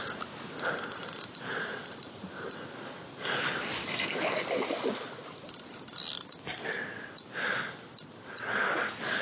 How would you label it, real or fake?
real